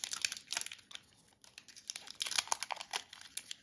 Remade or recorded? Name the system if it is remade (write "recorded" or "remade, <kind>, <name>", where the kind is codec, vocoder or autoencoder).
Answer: recorded